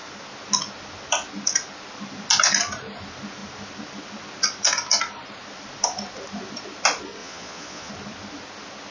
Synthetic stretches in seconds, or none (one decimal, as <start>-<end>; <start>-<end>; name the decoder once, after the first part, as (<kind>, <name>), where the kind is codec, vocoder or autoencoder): 7.2-7.9 (vocoder, Vocos)